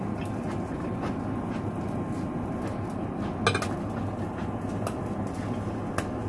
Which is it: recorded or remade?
recorded